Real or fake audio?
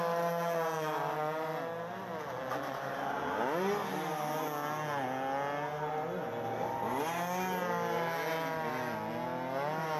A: real